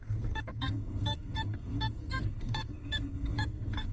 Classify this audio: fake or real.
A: fake